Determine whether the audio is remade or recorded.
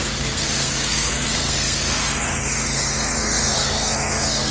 remade